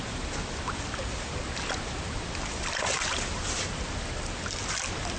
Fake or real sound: real